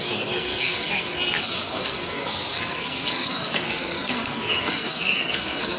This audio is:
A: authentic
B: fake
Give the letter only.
B